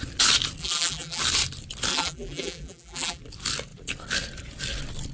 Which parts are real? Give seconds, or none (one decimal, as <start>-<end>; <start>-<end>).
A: 0.0-0.6; 1.2-1.9; 3.2-5.1